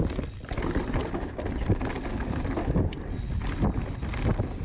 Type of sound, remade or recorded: recorded